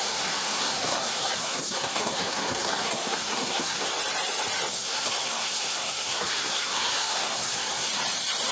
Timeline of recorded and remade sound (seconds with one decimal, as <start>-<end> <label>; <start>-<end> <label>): 0.0-3.9 remade; 3.9-4.7 recorded; 4.7-7.9 remade; 7.9-8.5 recorded